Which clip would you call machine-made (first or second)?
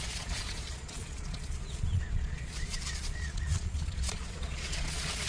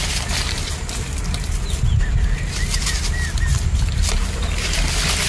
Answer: first